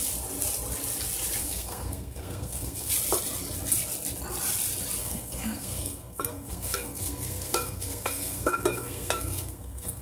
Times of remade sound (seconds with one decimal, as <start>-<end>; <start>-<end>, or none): 1.4-2.9; 5.0-10.0